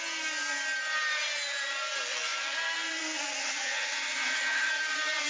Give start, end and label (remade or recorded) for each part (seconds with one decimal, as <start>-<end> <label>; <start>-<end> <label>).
0.0-3.4 recorded; 3.4-4.7 remade; 4.7-5.3 recorded